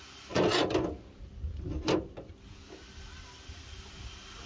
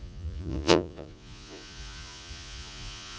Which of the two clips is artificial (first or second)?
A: second